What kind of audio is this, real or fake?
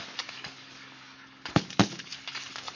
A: fake